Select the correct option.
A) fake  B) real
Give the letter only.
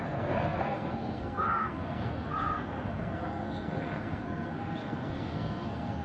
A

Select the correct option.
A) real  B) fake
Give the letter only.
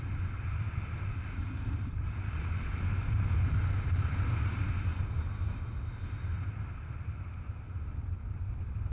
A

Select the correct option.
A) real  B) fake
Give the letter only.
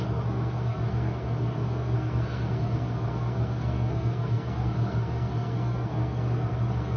B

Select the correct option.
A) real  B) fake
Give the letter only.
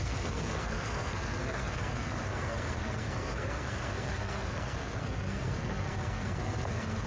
B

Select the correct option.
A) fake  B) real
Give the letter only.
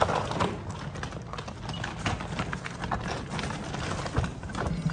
B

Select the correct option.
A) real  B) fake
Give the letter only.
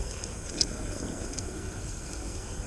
B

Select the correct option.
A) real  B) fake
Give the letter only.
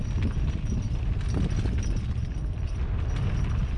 A